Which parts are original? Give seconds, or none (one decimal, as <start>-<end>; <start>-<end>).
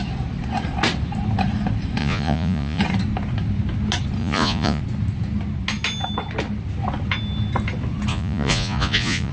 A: 0.0-2.0; 2.8-4.2; 4.8-8.1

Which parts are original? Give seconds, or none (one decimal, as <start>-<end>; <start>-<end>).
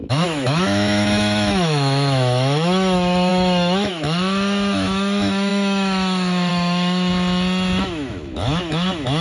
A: 7.1-7.8